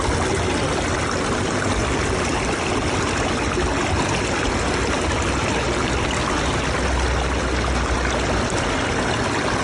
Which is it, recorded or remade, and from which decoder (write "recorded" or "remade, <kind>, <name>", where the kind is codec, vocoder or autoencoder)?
recorded